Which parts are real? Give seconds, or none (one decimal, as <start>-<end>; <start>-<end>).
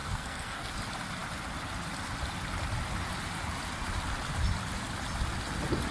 0.7-5.9